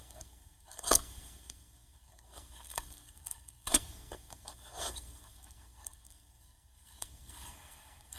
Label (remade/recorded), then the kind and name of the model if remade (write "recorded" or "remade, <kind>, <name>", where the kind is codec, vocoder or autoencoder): remade, codec, SNAC